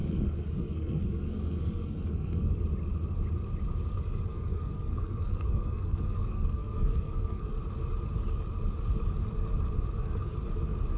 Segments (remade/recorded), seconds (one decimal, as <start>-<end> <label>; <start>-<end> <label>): 0.0-2.5 remade; 2.5-4.3 recorded; 4.3-7.5 remade; 7.5-11.0 recorded